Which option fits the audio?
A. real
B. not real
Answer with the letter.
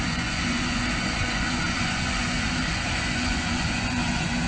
B